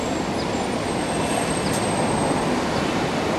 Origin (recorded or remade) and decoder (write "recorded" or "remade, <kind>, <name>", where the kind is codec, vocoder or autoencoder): recorded